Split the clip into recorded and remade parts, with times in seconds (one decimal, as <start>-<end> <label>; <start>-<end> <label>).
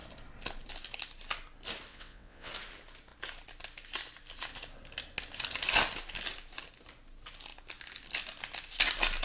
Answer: 0.0-1.9 recorded; 1.9-2.5 remade; 2.5-9.2 recorded